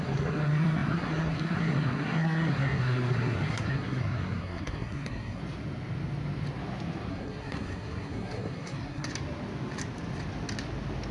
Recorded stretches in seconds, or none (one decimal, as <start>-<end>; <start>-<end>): 5.4-7.1; 9.1-11.1